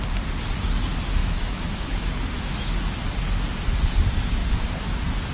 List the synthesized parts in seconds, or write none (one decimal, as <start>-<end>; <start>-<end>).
1.2-2.3